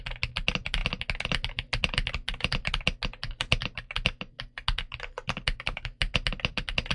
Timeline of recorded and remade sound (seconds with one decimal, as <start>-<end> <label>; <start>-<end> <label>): 0.0-6.9 recorded